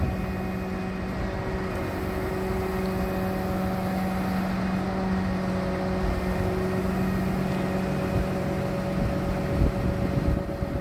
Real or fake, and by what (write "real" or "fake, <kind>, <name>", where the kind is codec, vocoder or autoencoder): real